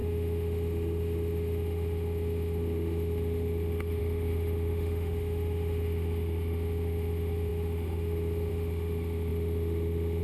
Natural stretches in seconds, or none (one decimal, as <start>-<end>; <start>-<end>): none